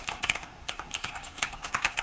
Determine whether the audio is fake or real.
fake